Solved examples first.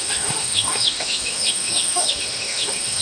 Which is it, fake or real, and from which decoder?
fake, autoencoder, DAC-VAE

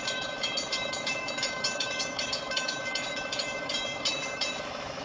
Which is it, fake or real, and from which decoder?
fake, autoencoder, DAC-VAE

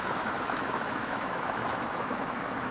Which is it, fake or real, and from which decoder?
fake, autoencoder, DAC-VAE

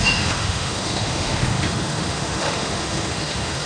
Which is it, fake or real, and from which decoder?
fake, autoencoder, DAC-VAE